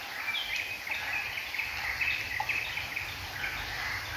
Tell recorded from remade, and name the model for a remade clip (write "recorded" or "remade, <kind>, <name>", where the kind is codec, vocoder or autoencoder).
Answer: recorded